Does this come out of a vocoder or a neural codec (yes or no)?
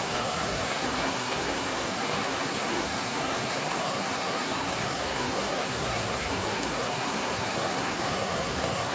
yes